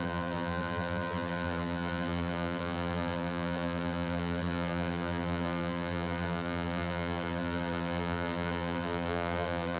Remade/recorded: remade